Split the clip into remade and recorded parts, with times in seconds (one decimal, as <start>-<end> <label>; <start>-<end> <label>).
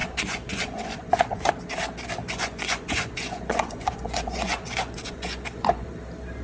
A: 0.0-1.5 remade; 1.5-2.2 recorded; 2.2-6.0 remade; 6.0-6.4 recorded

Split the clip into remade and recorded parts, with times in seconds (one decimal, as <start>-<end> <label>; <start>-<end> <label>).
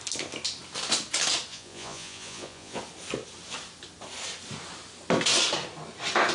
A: 0.0-1.5 recorded; 1.5-2.8 remade; 2.8-6.3 recorded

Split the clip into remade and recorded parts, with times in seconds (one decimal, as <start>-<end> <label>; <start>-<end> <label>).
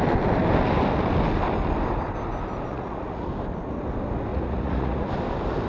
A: 0.0-2.7 recorded; 2.7-3.3 remade; 3.3-4.3 recorded; 4.3-5.1 remade; 5.1-5.7 recorded